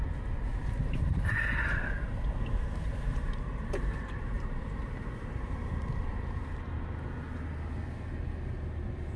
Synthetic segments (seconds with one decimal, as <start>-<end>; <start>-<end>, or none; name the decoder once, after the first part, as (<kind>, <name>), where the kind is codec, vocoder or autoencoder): 1.8-6.7 (vocoder, BigVGAN v2)